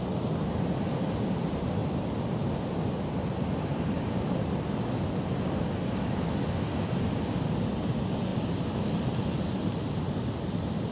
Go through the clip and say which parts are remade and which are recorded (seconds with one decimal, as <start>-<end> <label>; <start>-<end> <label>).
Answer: 0.0-10.9 recorded